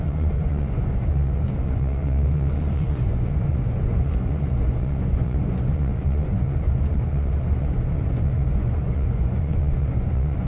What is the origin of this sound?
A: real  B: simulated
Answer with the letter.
B